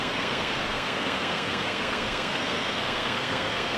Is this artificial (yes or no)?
yes